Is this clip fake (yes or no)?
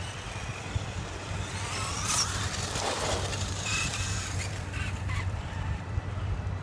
yes